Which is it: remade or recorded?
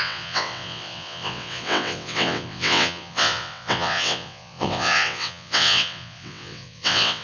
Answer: remade